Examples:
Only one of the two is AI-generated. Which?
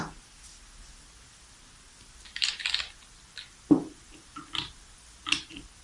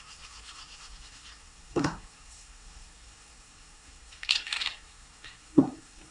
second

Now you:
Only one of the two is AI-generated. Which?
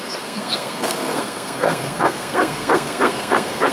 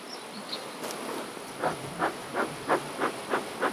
first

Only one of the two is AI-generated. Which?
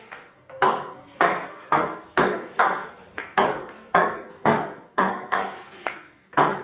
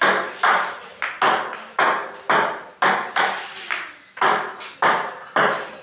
first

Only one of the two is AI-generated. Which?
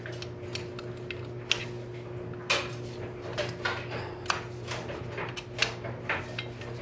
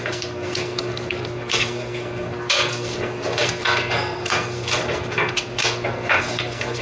second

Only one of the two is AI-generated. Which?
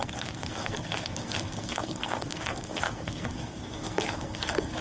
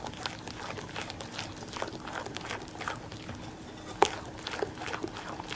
first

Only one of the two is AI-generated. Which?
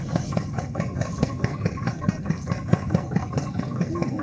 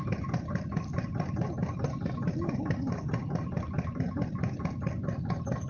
first